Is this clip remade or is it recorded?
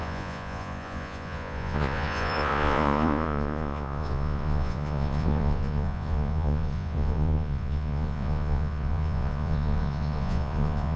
remade